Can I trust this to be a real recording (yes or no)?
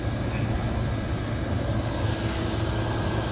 yes